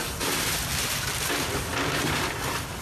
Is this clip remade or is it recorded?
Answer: recorded